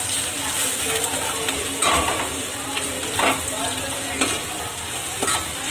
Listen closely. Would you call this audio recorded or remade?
remade